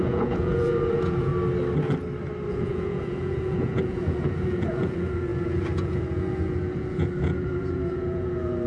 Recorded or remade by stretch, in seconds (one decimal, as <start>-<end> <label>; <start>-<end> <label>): 0.0-1.3 remade; 1.3-2.5 recorded; 2.5-8.7 remade